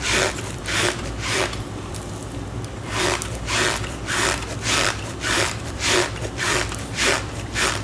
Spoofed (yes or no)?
yes